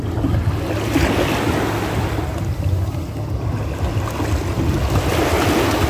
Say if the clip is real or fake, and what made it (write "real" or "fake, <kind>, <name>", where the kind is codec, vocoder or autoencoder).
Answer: real